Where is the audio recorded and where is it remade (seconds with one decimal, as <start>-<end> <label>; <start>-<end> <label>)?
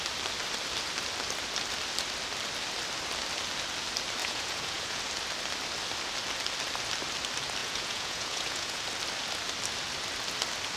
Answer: 0.0-4.2 recorded; 4.2-5.0 remade; 5.0-7.6 recorded; 7.6-8.8 remade; 8.8-10.8 recorded